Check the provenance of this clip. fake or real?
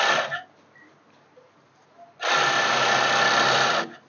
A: real